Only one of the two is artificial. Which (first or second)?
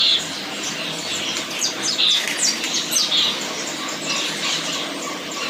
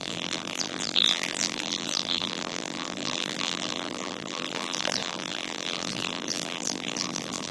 second